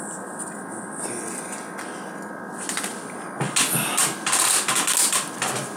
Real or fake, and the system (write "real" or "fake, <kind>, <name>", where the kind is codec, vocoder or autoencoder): real